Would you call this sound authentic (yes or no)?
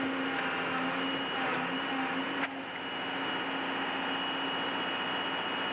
yes